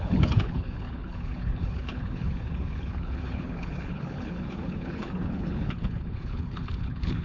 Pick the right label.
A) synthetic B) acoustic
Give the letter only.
A